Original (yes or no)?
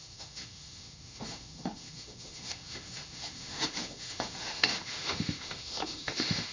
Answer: no